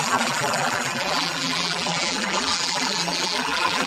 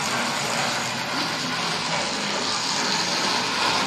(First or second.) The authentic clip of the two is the second